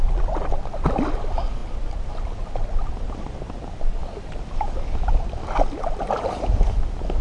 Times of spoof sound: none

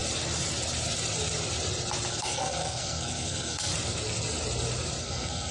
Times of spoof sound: 2.1-3.7 (codec, SNAC); 5.0-5.5

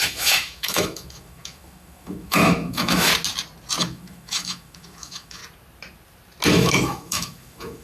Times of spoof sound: 0.0-3.1 (autoencoder, DAC-VAE); 3.8-5.4; 6.5-7.8